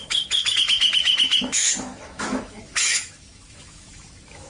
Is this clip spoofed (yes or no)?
yes